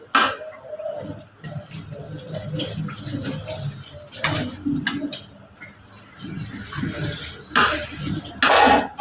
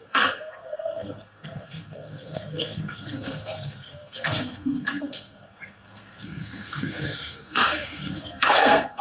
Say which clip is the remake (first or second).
second